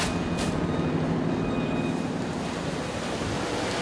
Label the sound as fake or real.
real